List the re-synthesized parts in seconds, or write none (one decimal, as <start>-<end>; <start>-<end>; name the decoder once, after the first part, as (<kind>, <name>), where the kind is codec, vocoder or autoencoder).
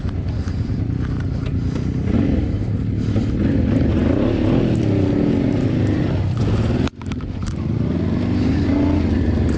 none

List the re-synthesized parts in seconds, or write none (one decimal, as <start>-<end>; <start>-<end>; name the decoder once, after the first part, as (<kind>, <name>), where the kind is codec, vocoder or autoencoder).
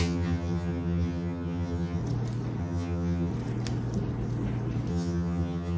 0.0-2.0 (vocoder, HiFi-GAN); 2.6-3.3; 4.9-5.8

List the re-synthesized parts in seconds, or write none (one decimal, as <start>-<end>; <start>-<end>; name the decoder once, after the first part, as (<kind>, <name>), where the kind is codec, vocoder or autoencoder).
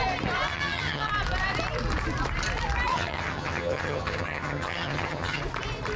0.5-1.1 (vocoder, HiFi-GAN); 2.9-5.4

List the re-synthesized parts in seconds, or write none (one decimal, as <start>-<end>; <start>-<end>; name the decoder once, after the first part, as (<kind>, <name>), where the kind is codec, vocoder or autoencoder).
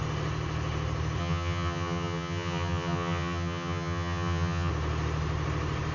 1.2-4.7 (vocoder, HiFi-GAN)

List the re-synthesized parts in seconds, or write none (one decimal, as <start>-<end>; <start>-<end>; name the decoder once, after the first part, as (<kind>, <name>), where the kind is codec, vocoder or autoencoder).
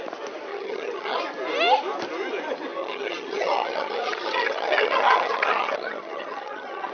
0.5-1.2 (vocoder, HiFi-GAN); 2.8-6.9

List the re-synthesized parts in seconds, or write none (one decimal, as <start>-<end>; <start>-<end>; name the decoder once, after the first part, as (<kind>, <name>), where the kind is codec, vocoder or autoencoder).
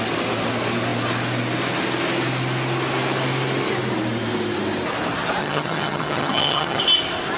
5.4-6.8 (vocoder, HiFi-GAN)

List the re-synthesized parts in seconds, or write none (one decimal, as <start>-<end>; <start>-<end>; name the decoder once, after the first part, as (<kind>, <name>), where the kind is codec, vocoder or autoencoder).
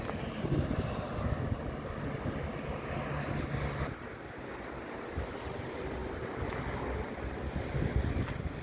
none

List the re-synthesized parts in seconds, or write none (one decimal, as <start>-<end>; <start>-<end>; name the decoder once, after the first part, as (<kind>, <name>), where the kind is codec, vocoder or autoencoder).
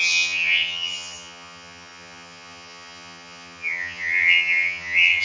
0.0-5.2 (vocoder, HiFi-GAN)